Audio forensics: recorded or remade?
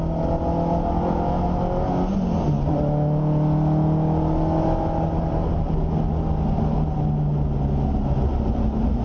recorded